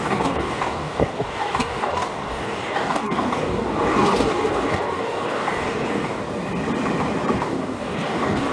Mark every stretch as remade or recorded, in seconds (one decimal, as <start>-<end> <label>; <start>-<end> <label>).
0.0-6.2 remade; 6.2-7.4 recorded; 7.4-8.5 remade